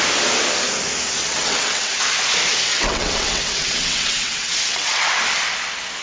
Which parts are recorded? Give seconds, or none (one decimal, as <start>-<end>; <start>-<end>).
0.0-1.2; 1.9-2.7; 5.1-6.0